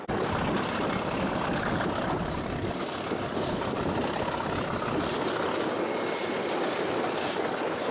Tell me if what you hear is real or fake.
real